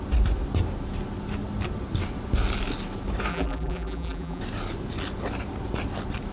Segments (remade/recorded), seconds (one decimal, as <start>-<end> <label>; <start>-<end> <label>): 0.0-3.3 recorded; 3.3-4.4 remade; 4.4-6.3 recorded